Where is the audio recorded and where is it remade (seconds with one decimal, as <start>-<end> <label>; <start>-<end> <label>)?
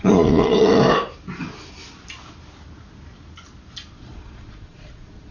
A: 0.0-0.8 remade; 0.8-3.9 recorded; 3.9-5.3 remade